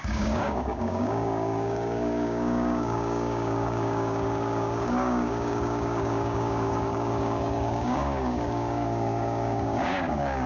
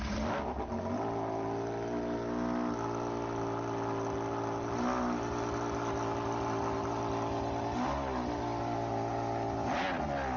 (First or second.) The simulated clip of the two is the first